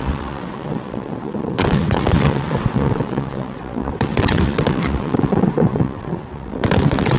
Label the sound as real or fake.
fake